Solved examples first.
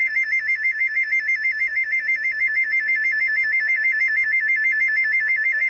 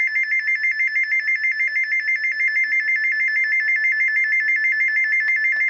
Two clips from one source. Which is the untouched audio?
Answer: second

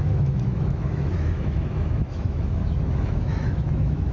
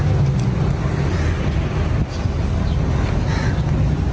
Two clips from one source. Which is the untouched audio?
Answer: second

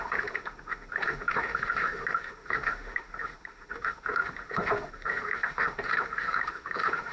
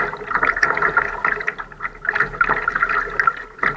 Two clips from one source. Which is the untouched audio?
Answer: second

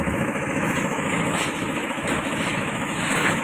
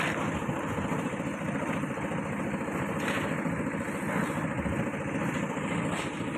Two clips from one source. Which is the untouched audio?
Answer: second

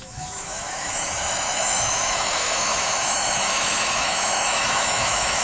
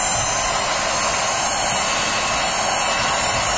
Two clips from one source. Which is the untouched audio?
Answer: second